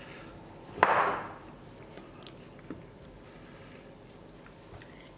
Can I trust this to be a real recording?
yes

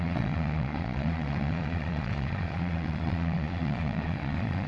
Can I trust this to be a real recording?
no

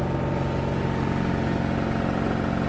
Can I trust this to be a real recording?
yes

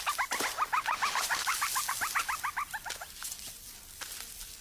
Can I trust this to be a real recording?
yes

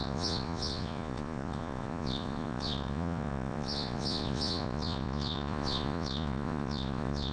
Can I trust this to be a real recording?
no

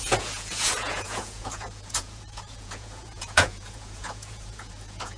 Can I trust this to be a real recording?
no